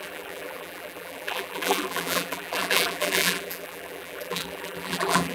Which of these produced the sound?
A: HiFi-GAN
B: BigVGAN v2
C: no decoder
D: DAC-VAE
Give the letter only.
B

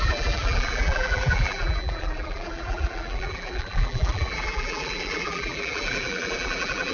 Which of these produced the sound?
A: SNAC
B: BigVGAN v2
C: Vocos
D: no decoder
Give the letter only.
B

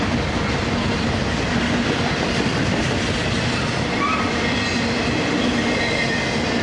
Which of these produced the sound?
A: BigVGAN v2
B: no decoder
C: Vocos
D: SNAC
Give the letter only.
A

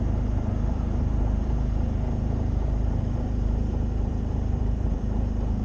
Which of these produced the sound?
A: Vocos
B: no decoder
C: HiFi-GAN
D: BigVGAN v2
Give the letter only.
D